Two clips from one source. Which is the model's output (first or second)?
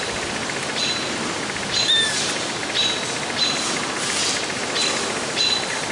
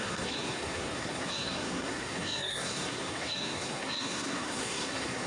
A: second